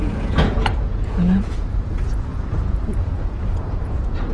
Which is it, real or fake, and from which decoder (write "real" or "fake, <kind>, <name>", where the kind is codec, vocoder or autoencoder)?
fake, vocoder, Vocos